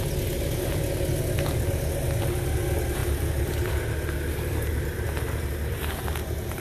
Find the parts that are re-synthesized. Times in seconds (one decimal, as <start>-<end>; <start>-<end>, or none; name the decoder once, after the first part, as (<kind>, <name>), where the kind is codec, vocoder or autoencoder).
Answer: none